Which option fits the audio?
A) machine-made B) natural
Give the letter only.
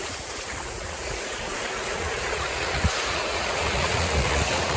A